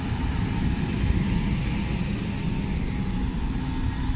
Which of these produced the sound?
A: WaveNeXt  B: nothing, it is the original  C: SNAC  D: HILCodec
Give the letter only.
B